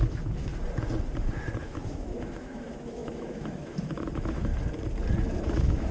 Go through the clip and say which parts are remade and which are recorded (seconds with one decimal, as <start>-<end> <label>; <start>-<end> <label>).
0.0-0.5 remade; 0.5-1.6 recorded; 1.6-4.5 remade; 4.5-5.5 recorded; 5.5-5.9 remade